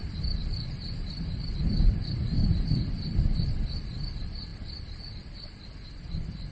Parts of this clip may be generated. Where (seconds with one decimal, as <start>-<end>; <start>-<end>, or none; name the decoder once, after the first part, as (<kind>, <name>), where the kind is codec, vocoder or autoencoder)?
0.0-2.9 (vocoder, BigVGAN v2)